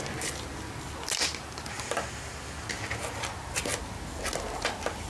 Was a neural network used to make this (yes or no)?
no